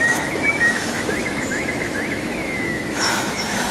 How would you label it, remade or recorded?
remade